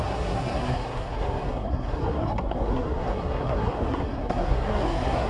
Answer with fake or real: fake